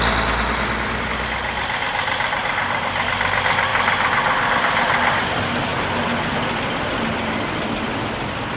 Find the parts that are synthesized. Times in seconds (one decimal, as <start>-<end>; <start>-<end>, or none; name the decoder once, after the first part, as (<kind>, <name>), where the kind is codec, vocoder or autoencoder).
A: none

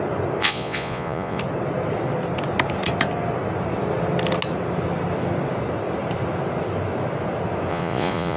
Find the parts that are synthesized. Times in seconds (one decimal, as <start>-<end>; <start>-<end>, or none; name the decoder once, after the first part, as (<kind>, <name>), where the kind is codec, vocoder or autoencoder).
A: 0.4-1.4 (vocoder, Vocos); 7.7-8.4